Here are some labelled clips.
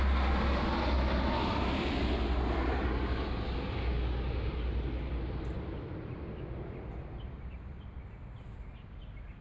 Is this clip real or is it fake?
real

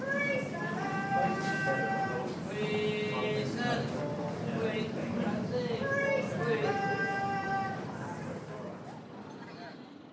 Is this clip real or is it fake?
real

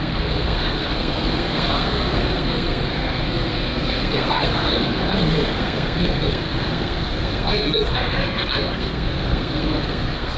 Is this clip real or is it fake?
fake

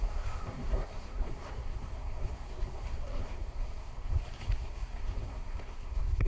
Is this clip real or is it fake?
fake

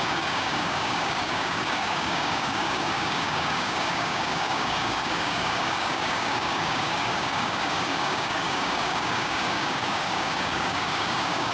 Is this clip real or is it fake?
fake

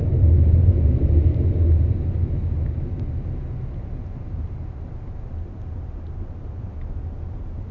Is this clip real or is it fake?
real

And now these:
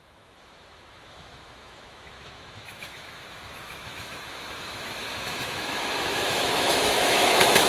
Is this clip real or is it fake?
fake